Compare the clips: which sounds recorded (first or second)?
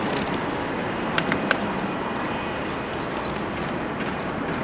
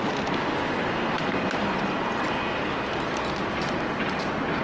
second